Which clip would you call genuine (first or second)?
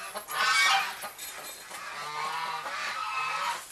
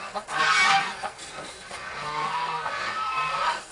first